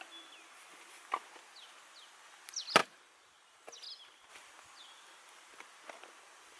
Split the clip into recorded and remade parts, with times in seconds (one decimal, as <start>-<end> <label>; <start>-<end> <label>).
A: 0.0-6.6 recorded